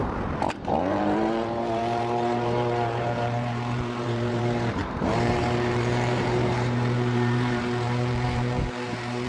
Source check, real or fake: fake